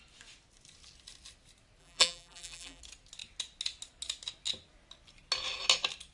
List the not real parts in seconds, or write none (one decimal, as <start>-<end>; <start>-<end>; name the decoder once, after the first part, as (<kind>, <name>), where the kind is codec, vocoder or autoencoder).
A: 1.8-2.8 (vocoder, BigVGAN v2)